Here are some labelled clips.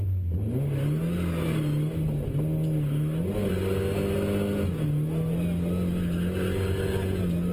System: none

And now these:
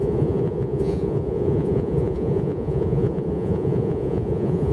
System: vocoder, Vocos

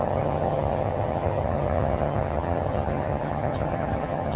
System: vocoder, HiFi-GAN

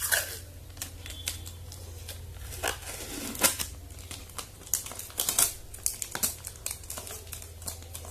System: none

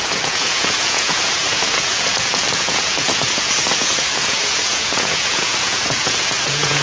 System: vocoder, Vocos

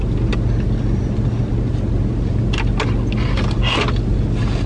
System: none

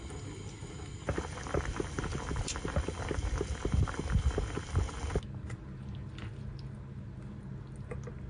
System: none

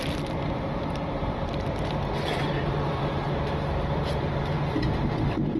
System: vocoder, BigVGAN v2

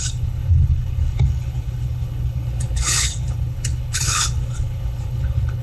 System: codec, HILCodec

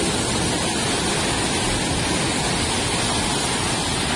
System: none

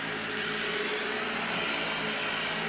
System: none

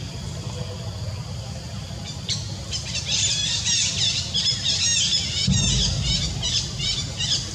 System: none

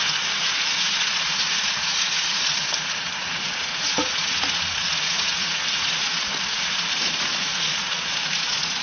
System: vocoder, Vocos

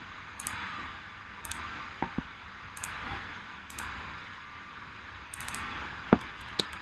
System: codec, SNAC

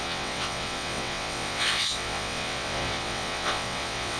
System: vocoder, WaveNeXt